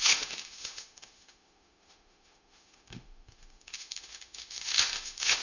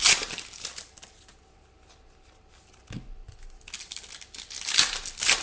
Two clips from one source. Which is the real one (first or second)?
second